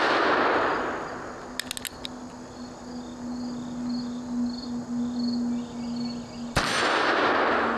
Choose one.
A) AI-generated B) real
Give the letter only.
B